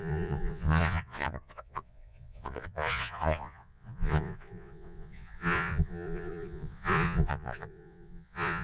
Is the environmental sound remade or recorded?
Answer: remade